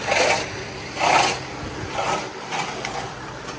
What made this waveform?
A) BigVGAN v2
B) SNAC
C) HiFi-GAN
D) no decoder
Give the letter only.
A